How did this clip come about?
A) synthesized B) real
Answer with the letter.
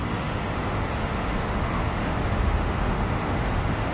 A